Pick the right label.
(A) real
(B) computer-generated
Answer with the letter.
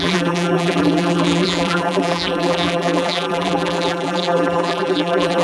B